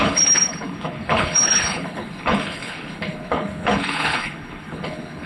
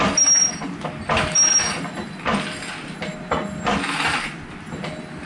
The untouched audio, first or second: second